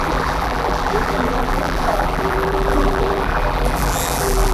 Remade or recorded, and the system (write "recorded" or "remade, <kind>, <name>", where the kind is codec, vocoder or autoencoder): remade, vocoder, BigVGAN v2